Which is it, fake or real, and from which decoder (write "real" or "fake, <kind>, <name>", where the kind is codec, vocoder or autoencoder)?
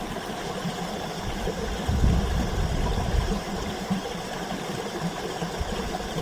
real